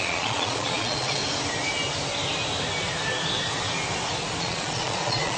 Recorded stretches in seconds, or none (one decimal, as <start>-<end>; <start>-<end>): 1.2-4.4